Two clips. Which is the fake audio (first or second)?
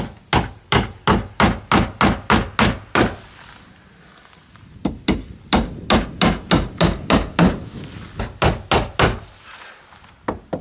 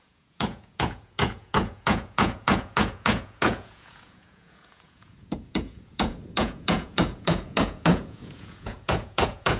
second